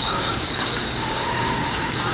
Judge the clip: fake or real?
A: fake